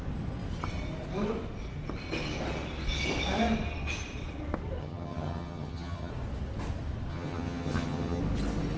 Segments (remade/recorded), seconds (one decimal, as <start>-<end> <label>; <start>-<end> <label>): 0.0-4.8 recorded; 4.8-6.1 remade; 6.1-7.1 recorded; 7.1-8.2 remade; 8.2-8.8 recorded